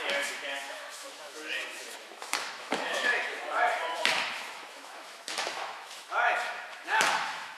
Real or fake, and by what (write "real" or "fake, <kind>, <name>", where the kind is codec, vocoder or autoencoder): fake, autoencoder, DAC-VAE